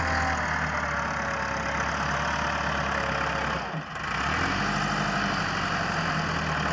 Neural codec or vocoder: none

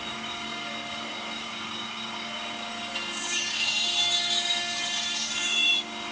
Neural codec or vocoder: codec, DAC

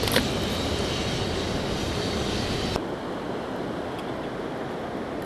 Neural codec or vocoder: none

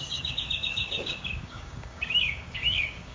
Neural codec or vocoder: codec, DAC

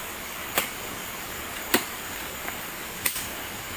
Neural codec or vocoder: codec, DAC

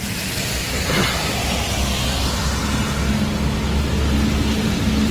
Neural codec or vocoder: none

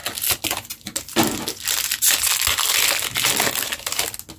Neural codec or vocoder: none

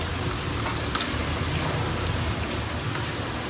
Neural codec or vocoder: none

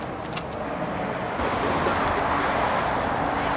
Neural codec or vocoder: none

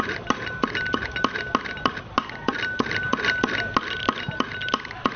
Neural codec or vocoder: none